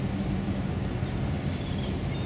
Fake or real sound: real